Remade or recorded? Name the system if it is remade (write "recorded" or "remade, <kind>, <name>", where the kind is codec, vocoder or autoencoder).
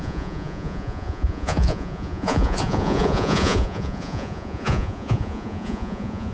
remade, vocoder, Vocos